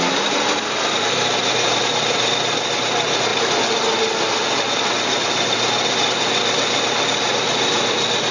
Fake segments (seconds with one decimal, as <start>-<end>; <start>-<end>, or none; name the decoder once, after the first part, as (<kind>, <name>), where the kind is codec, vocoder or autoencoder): none